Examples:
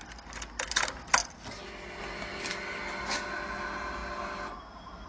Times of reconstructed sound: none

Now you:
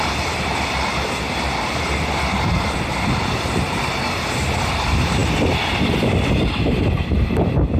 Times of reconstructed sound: 0.0-7.8

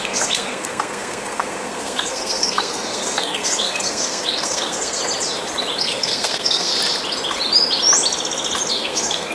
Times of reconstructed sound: 0.0-5.0; 5.8-6.7; 8.7-9.3

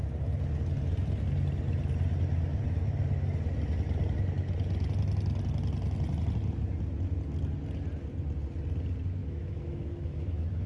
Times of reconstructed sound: 9.2-10.7

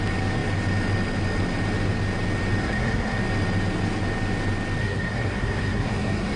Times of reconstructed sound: 2.6-3.2; 4.8-6.4

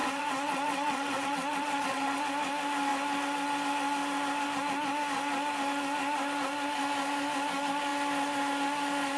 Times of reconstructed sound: 0.0-2.2

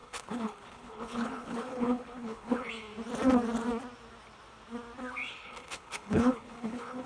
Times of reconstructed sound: 0.0-2.7; 5.3-7.1

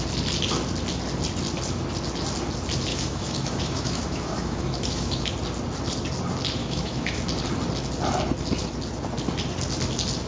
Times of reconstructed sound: 2.9-5.3; 6.6-7.2